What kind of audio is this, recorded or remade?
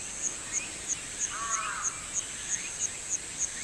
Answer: recorded